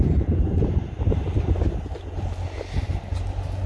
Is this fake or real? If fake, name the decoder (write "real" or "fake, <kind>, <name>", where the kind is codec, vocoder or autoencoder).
real